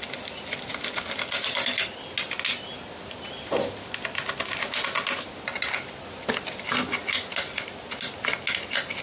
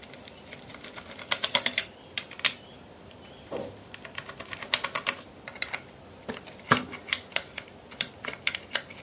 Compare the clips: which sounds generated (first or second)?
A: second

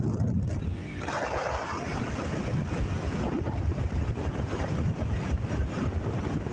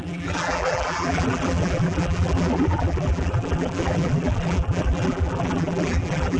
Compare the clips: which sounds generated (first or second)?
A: second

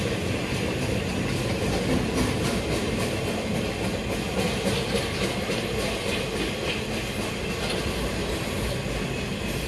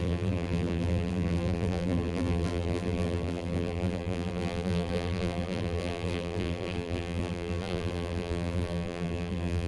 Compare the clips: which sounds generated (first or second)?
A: second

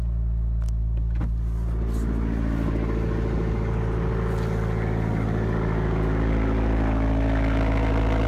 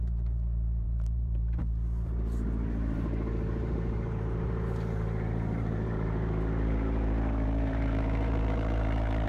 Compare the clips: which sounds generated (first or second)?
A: second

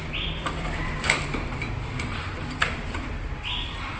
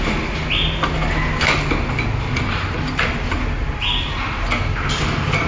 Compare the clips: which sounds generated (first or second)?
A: first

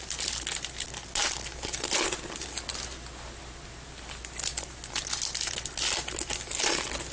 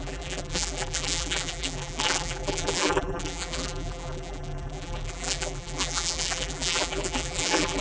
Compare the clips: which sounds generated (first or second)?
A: second